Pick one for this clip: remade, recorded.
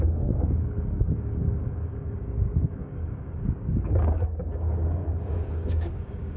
remade